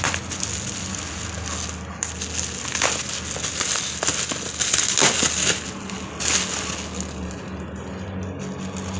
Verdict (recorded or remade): recorded